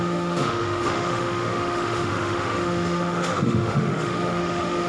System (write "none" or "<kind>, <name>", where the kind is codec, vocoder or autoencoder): autoencoder, DAC-VAE